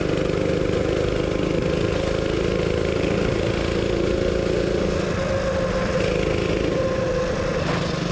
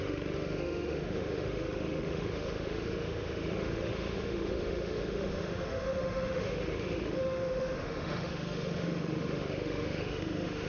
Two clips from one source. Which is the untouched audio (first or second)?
first